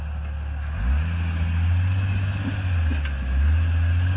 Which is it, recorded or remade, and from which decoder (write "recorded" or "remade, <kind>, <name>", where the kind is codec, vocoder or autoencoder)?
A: recorded